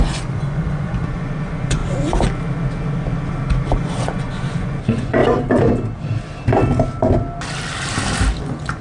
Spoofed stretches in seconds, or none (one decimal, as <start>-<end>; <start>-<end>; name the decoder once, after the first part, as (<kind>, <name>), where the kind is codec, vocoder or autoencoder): 0.0-1.8 (vocoder, Vocos); 3.7-5.2; 8.4-8.8